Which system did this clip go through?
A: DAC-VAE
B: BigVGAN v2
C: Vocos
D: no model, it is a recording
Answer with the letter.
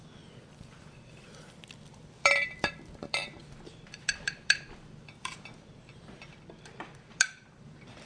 B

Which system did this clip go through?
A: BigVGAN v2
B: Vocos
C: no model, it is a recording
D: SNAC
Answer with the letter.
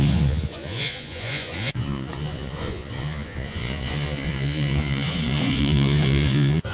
B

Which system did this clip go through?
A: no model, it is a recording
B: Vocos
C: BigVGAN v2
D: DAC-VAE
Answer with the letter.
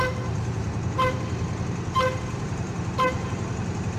C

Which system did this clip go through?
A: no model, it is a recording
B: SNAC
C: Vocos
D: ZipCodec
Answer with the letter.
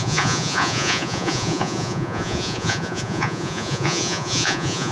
C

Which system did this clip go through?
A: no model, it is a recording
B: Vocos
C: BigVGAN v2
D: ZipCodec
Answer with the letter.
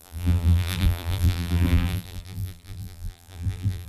C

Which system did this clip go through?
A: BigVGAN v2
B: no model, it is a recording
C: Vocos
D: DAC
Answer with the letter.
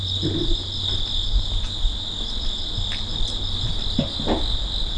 B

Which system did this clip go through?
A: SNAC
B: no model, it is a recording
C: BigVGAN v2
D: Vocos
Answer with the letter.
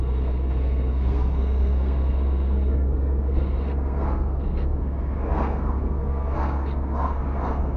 A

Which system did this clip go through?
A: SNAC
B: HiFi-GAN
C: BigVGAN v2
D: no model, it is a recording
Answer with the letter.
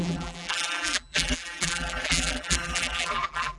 C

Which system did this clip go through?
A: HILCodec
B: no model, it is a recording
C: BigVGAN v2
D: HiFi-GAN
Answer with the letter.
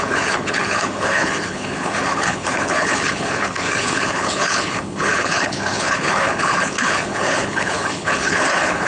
A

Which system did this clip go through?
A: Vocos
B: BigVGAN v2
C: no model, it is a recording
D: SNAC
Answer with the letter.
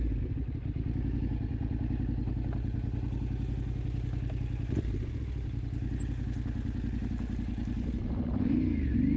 C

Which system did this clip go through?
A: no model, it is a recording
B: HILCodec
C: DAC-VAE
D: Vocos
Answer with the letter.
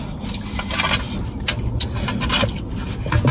A